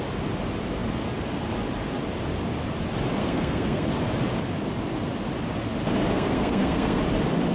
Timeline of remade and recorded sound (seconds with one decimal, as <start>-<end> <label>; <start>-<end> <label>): 0.0-3.2 recorded; 3.2-3.9 remade; 3.9-6.0 recorded; 6.0-7.0 remade; 7.0-7.5 recorded

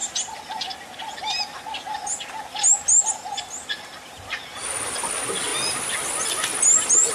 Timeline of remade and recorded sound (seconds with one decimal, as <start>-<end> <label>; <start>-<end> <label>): 0.0-7.1 recorded

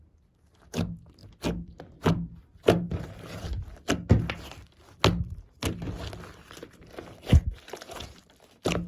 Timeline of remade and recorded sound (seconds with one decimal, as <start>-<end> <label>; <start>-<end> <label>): 0.0-8.9 recorded